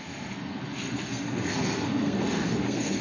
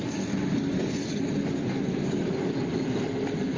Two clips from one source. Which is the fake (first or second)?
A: first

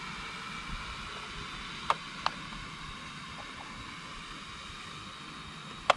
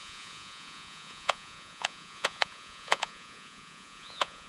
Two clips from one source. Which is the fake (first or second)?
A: second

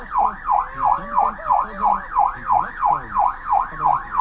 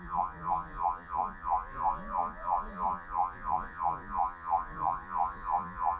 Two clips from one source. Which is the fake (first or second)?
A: second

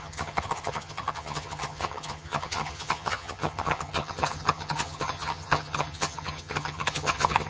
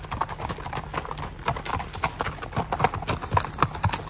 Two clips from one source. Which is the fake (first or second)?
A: first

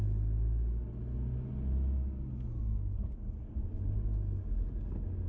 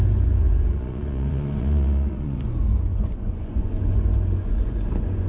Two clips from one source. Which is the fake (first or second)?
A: second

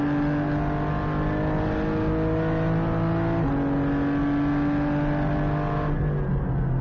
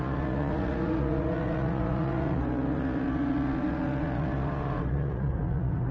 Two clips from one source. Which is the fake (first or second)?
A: second